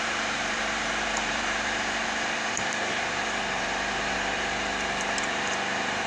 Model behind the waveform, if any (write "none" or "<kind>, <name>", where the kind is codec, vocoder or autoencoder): vocoder, BigVGAN v2